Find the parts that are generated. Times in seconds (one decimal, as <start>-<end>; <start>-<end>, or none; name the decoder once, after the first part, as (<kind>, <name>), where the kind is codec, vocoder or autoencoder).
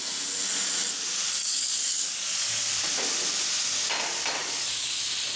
1.4-2.6 (codec, DAC); 4.4-5.0